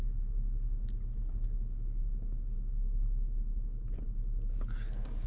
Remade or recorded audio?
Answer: recorded